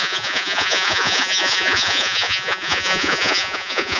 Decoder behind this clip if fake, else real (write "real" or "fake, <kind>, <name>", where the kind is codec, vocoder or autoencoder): fake, vocoder, Vocos